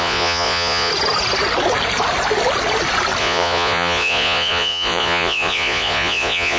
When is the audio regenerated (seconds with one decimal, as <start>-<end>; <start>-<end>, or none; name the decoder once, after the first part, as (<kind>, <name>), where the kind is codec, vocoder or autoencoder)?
0.0-0.9 (vocoder, Vocos); 3.2-6.6